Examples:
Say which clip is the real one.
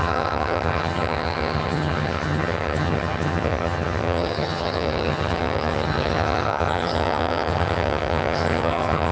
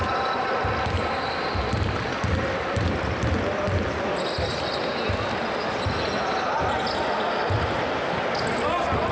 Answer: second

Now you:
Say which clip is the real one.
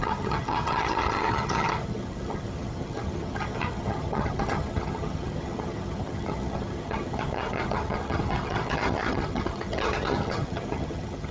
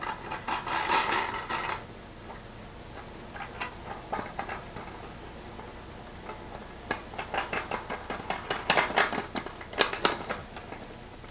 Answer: second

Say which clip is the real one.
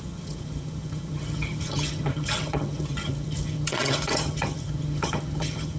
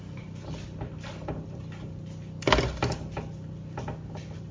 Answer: second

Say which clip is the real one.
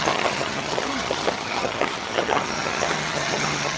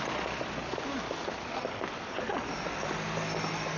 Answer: second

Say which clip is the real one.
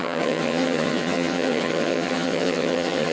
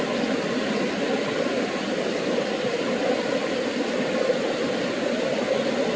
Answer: second